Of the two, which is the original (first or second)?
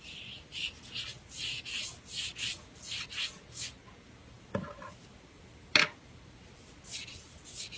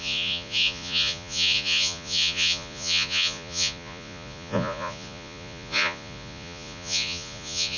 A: first